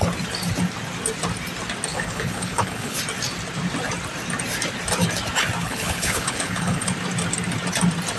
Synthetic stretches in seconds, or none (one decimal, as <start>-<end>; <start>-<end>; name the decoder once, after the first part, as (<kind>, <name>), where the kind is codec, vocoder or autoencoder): 1.9-3.0 (codec, HILCodec); 5.6-6.9